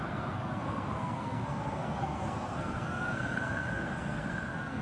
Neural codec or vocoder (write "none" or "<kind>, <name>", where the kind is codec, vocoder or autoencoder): codec, SNAC